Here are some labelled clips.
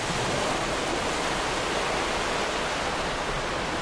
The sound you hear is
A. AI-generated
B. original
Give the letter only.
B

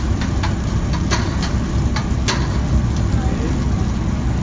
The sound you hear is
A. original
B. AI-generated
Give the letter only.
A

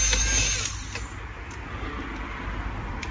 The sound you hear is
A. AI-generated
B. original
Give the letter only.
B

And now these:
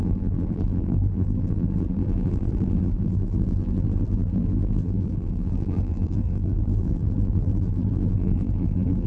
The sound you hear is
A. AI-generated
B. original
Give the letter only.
A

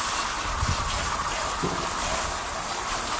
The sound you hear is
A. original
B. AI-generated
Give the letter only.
A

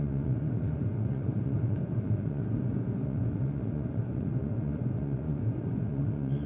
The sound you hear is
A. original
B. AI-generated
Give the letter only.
B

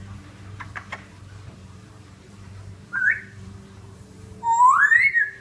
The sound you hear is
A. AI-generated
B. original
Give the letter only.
A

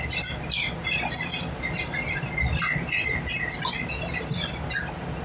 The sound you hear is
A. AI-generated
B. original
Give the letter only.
B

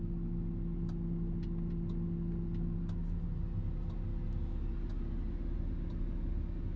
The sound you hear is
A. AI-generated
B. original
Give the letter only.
B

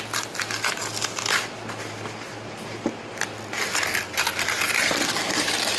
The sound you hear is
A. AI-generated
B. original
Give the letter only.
B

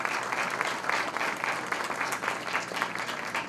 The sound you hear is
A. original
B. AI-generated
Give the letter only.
A